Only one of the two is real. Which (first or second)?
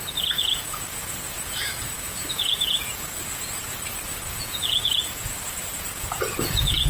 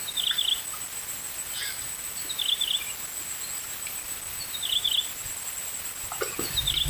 second